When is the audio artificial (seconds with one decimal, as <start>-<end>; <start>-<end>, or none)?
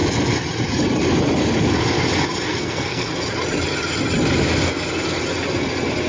2.5-3.1